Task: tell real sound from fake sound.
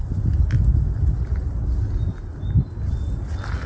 real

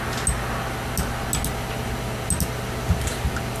real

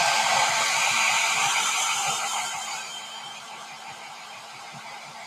fake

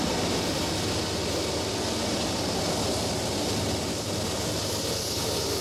real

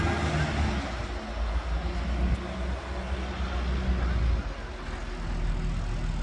real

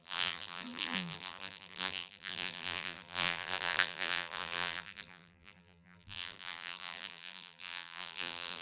fake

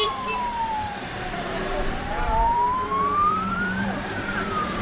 fake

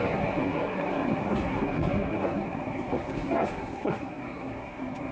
fake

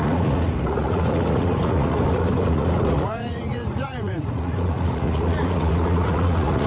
fake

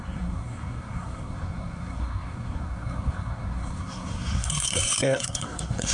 fake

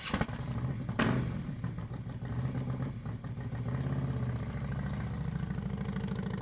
real